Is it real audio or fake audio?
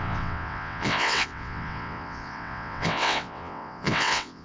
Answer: fake